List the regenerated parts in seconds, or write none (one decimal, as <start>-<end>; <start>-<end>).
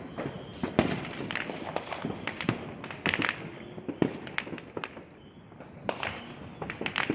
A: none